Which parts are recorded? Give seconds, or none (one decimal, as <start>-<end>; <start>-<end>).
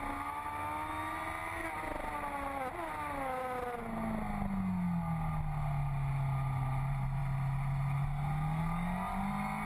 0.0-9.7